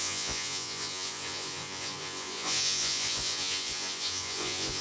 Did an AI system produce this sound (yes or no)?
yes